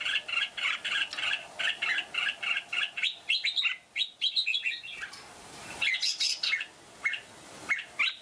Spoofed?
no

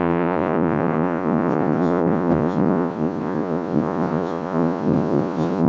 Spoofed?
yes